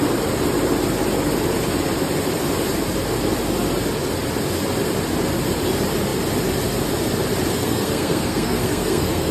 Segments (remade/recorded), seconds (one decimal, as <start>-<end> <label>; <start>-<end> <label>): 0.0-7.5 recorded; 7.5-9.3 remade